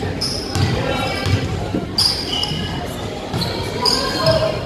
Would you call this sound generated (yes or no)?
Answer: no